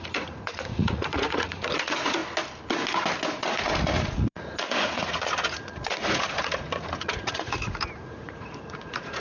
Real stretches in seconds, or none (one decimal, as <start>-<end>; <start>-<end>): 2.2-3.3

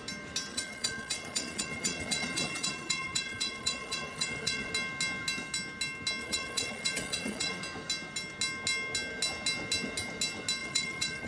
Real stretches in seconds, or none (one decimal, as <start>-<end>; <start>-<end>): 0.0-0.5; 4.7-6.2; 7.6-10.6